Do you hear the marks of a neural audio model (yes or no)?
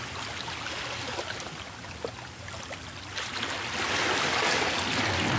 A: no